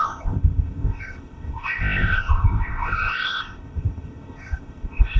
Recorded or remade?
remade